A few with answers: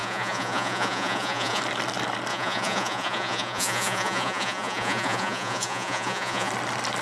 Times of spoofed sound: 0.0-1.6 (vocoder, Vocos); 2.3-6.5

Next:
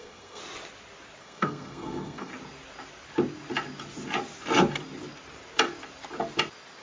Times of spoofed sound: 0.0-0.4 (codec, SNAC); 1.2-2.3

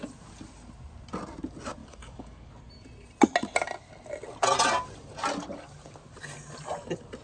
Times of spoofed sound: 1.8-2.5 (codec, DAC)

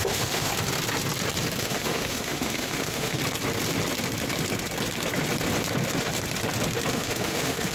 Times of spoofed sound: 0.0-0.5 (autoencoder, DAC-VAE); 1.6-3.2; 6.9-7.7